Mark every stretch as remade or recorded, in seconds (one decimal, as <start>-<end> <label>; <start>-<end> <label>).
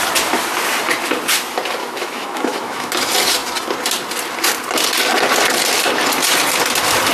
0.0-1.8 recorded; 1.8-2.9 remade; 2.9-7.1 recorded